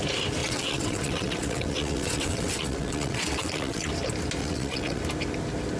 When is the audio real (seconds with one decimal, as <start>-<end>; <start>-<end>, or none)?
0.0-0.4; 3.9-4.4; 5.0-5.8